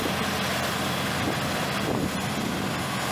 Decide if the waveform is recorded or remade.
recorded